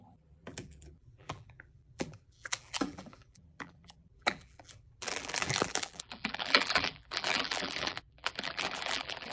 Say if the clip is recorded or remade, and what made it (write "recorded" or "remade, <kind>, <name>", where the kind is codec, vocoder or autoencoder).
remade, vocoder, BigVGAN v2